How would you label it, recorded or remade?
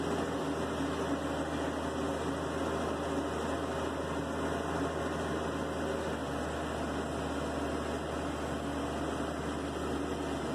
recorded